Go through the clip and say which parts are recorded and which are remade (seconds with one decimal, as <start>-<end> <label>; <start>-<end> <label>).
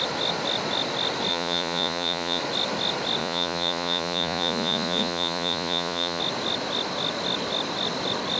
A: 0.0-1.3 recorded; 1.3-2.4 remade; 2.4-3.2 recorded; 3.2-6.2 remade; 6.2-8.4 recorded